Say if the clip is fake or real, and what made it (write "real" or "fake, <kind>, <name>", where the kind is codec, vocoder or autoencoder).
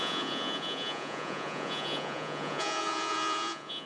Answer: fake, vocoder, Vocos